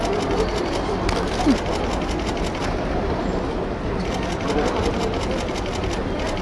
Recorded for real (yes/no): yes